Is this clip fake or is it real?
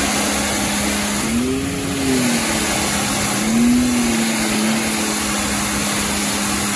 real